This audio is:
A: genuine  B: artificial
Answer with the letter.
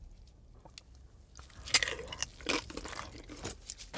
A